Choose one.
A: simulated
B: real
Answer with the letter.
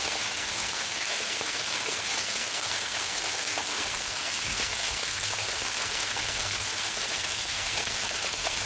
A